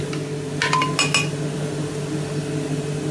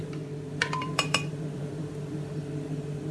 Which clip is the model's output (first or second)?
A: second